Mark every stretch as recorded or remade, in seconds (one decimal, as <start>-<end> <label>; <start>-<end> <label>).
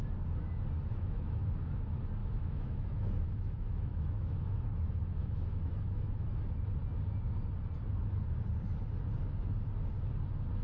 0.0-0.9 recorded; 0.9-1.8 remade; 1.8-2.2 recorded; 2.2-6.3 remade; 6.3-10.6 recorded